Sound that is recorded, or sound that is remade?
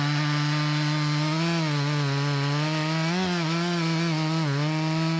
recorded